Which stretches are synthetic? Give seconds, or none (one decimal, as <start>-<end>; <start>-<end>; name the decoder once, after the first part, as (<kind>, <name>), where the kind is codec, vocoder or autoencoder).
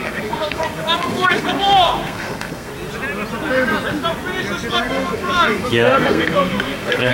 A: 0.0-2.7 (codec, SNAC); 4.7-7.1